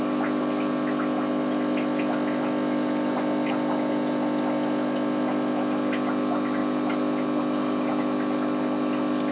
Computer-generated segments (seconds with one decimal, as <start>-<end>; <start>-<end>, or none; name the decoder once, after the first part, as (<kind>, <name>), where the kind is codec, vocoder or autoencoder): none